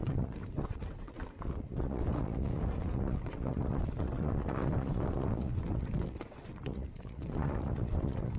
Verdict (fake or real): fake